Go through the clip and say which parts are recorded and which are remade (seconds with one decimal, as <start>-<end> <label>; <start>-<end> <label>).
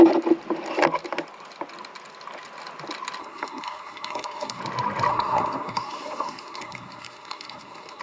0.0-3.2 recorded; 3.2-4.6 remade; 4.6-5.1 recorded; 5.1-8.0 remade